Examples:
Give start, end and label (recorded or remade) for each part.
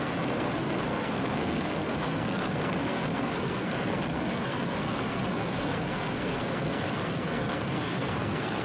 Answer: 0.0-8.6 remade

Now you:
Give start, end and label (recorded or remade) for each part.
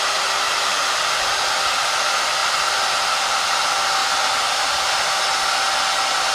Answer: 0.0-4.0 recorded; 4.0-5.0 remade; 5.0-6.3 recorded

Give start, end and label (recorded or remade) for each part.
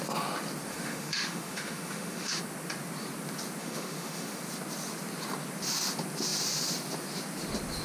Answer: 0.0-0.7 recorded; 0.7-2.4 remade; 2.4-3.6 recorded; 3.6-4.4 remade; 4.4-7.8 recorded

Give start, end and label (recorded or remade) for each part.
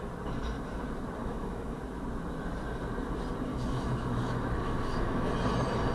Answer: 0.0-1.2 recorded; 1.2-1.8 remade; 1.8-3.5 recorded; 3.5-5.3 remade; 5.3-5.9 recorded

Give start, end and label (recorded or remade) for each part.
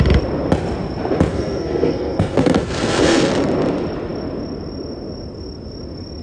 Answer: 0.0-1.3 recorded; 1.3-3.3 remade; 3.3-6.2 recorded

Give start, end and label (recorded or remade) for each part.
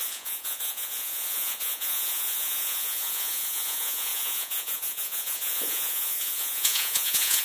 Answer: 0.0-7.4 remade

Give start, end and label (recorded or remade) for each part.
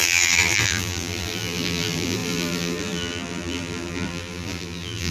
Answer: 0.0-5.1 remade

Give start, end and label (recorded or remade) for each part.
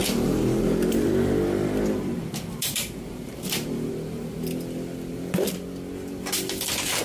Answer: 0.0-1.1 remade; 1.1-2.6 recorded; 2.6-3.9 remade; 3.9-7.0 recorded